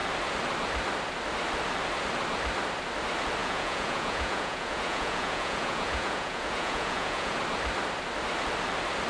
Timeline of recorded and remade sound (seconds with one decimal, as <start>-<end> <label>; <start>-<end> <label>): 0.0-3.4 recorded; 3.4-7.4 remade; 7.4-9.1 recorded